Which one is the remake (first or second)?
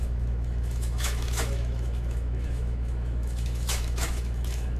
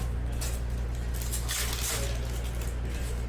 first